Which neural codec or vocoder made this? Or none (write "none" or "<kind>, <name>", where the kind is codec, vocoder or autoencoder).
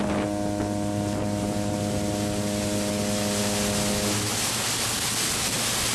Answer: none